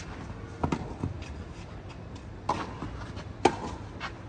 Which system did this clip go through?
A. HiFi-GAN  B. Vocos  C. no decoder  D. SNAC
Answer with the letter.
C